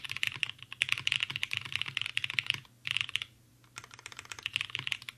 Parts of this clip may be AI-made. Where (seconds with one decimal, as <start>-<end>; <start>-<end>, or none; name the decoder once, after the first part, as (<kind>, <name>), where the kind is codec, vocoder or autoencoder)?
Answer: none